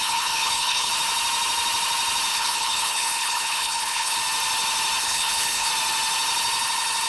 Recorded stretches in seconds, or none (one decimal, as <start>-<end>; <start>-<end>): 0.9-2.3; 4.2-5.0; 5.7-7.1